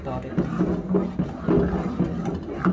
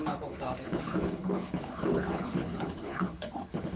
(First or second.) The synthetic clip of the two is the second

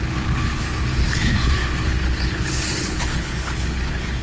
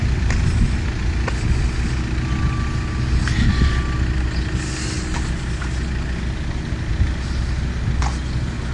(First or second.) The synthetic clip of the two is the first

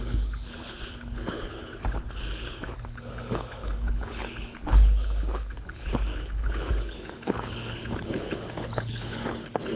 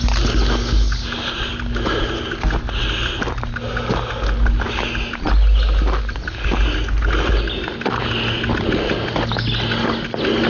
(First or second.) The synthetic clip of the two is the first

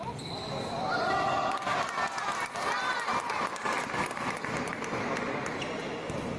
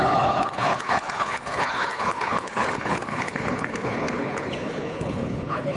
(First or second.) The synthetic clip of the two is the second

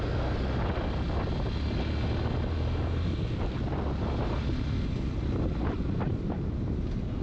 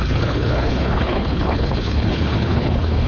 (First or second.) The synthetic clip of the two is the second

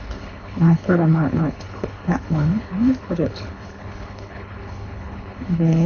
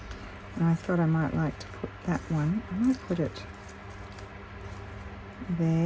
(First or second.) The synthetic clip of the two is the first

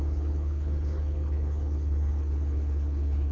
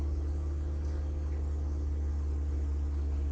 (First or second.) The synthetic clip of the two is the first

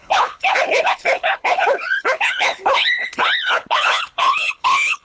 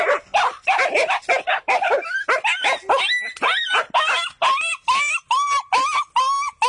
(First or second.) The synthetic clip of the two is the first